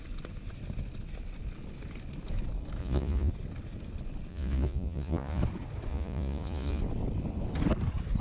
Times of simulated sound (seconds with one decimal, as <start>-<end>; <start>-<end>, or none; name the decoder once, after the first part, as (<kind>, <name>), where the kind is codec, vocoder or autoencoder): 2.8-3.3 (vocoder, Vocos); 4.3-5.4; 5.9-6.8